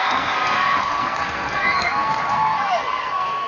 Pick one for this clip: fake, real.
fake